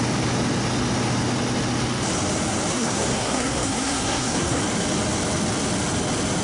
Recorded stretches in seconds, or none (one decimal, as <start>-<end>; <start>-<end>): 0.0-2.7; 4.6-6.4